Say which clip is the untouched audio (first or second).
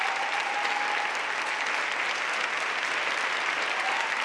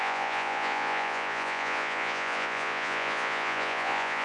first